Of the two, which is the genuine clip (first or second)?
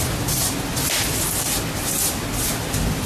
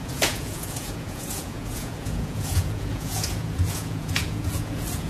first